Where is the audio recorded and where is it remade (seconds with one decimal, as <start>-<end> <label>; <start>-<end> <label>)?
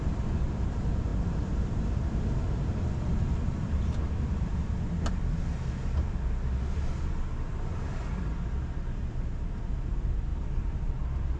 0.0-1.1 recorded; 1.1-3.8 remade; 3.8-10.3 recorded; 10.3-10.9 remade; 10.9-11.4 recorded